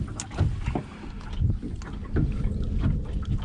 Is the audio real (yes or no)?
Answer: yes